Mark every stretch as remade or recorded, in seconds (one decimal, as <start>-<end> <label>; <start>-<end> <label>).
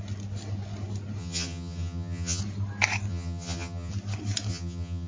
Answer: 0.0-1.2 recorded; 1.2-2.4 remade; 2.4-3.1 recorded; 3.1-3.9 remade; 3.9-4.5 recorded; 4.5-5.1 remade